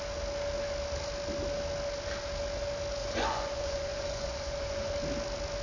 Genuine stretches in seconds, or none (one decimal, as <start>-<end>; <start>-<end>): 0.0-3.0; 4.9-5.6